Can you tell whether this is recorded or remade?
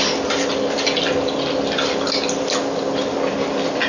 recorded